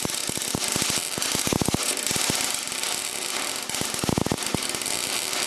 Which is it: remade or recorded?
recorded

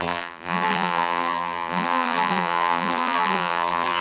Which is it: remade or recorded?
remade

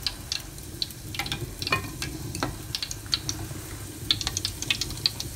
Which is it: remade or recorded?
recorded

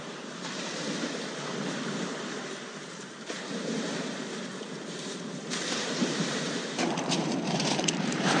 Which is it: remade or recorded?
remade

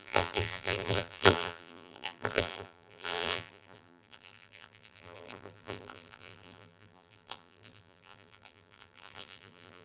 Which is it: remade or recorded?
remade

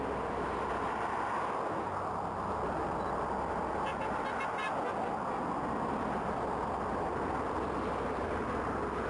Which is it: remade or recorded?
recorded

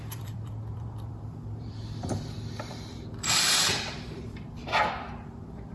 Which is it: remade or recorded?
remade